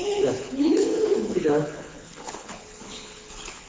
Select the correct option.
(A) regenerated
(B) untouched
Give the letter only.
A